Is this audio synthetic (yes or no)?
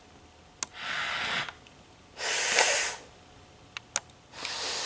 no